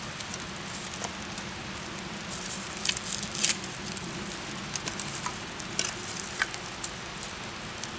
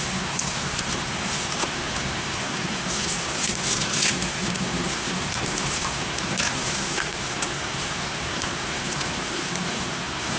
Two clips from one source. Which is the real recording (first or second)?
first